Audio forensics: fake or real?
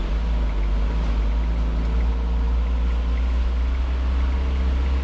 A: real